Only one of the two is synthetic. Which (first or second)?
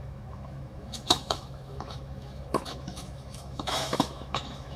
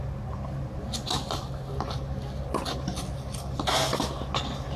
first